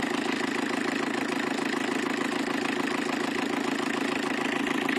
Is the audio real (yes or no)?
yes